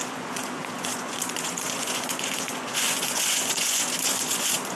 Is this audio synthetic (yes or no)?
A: yes